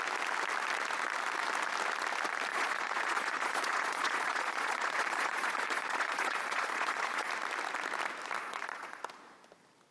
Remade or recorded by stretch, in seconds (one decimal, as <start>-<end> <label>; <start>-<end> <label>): 0.0-2.5 recorded; 2.5-7.3 remade; 7.3-8.4 recorded; 8.4-9.0 remade; 9.0-9.9 recorded